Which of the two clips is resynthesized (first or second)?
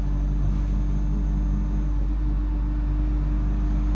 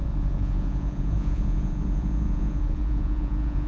second